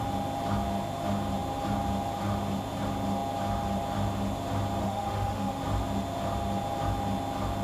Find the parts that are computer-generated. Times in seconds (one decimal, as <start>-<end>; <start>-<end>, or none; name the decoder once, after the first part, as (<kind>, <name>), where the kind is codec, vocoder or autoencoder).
4.8-5.6 (autoencoder, DAC-VAE)

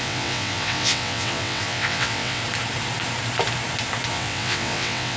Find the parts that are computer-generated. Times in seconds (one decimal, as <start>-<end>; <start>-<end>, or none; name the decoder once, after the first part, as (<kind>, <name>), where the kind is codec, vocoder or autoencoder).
0.0-2.4 (vocoder, WaveNeXt); 4.1-5.2

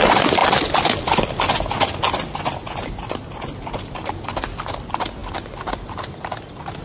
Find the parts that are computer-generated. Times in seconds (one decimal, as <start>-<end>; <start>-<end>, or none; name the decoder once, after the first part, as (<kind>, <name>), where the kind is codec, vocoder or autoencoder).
none

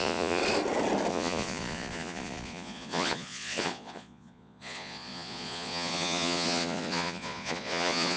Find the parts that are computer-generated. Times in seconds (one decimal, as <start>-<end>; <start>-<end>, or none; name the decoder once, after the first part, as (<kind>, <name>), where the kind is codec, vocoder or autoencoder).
0.0-0.4 (vocoder, Vocos); 1.1-8.2